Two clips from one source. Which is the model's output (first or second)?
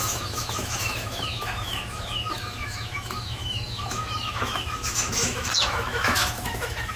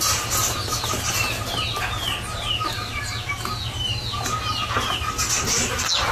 first